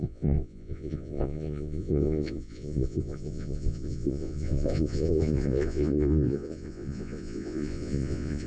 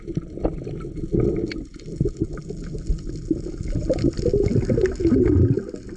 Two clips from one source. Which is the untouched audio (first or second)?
second